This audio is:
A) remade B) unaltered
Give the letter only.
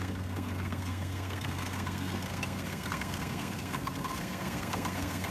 A